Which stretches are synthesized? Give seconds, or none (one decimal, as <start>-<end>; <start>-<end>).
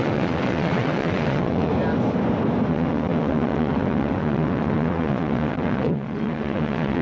0.0-1.7; 2.7-7.0